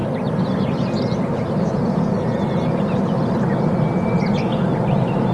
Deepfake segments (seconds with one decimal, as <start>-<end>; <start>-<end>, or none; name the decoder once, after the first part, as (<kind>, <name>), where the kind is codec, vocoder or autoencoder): none